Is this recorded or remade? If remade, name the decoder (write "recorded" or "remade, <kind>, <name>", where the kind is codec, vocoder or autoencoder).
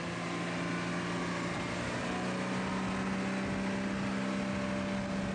recorded